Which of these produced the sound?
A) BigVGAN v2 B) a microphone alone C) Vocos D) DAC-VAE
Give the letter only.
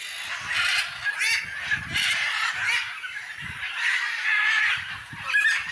B